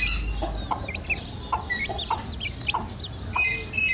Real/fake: real